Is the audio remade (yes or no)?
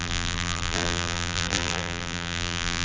yes